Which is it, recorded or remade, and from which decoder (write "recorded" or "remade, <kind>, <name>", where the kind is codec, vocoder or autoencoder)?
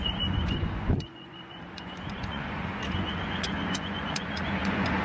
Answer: remade, vocoder, Vocos